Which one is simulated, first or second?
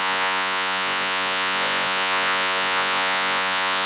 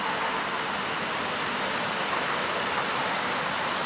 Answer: first